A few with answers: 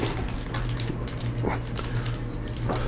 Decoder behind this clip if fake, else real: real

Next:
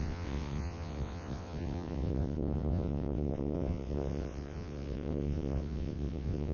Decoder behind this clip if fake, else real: fake, vocoder, WaveNeXt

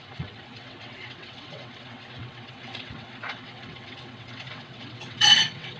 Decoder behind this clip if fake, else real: fake, vocoder, WaveNeXt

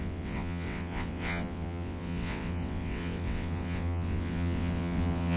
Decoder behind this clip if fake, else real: fake, vocoder, WaveNeXt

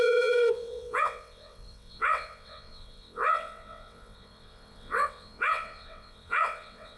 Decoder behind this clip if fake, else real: fake, vocoder, WaveNeXt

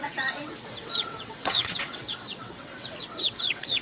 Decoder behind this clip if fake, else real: fake, vocoder, WaveNeXt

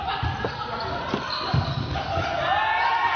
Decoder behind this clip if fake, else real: real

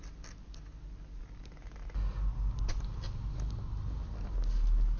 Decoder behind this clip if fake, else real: real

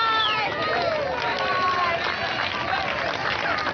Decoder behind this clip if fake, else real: real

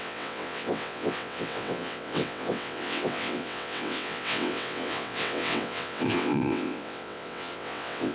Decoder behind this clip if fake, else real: fake, vocoder, WaveNeXt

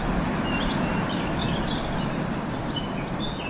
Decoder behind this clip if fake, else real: real